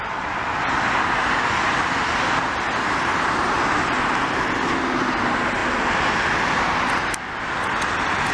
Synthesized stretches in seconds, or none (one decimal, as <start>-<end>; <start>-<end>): none